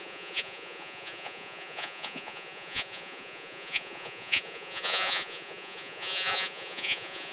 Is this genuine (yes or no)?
no